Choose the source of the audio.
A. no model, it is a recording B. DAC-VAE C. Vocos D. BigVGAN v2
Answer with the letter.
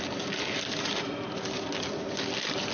A